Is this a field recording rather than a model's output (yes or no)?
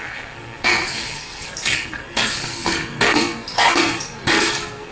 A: no